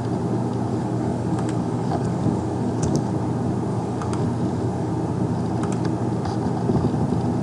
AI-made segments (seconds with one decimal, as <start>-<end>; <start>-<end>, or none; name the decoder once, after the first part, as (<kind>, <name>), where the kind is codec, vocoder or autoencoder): 0.7-3.1 (codec, DAC); 3.7-4.9